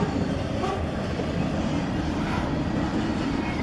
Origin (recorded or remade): remade